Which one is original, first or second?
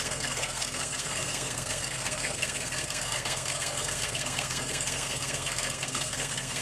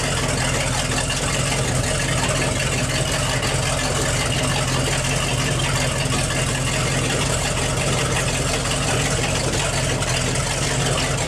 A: second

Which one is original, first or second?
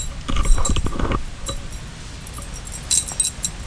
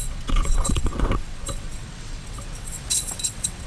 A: first